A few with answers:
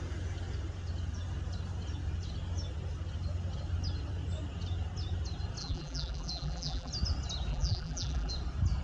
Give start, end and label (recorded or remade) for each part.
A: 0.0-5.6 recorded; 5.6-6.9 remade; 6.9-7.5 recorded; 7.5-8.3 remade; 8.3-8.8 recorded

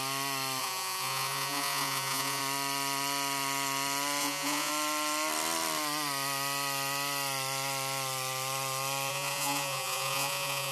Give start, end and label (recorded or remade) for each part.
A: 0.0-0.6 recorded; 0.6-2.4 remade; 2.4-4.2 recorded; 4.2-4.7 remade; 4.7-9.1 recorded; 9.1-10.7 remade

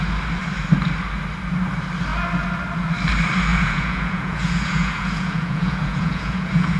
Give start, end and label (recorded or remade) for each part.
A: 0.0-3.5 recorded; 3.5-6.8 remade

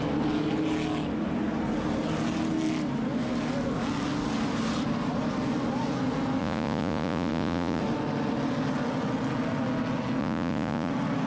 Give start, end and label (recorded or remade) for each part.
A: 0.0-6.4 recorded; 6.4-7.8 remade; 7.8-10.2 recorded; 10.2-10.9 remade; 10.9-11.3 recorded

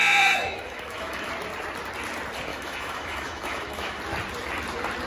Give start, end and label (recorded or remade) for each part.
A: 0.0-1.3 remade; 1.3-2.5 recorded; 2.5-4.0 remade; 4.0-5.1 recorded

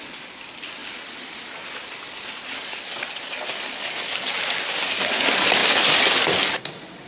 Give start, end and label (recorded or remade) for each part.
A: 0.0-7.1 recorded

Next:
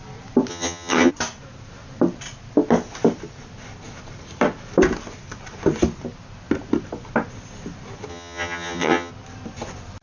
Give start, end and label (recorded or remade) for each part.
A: 0.0-0.5 recorded; 0.5-1.1 remade; 1.1-8.1 recorded; 8.1-9.1 remade; 9.1-10.0 recorded

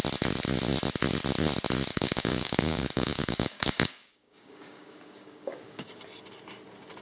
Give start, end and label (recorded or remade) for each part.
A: 0.0-1.9 recorded; 1.9-6.0 remade; 6.0-7.0 recorded